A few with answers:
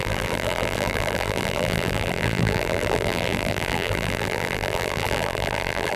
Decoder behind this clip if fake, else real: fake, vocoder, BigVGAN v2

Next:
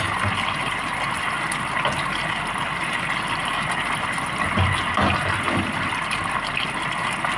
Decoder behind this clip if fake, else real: real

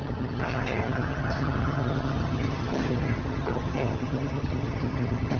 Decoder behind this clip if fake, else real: fake, vocoder, HiFi-GAN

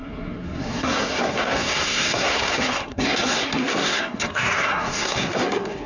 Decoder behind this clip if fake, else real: fake, codec, SNAC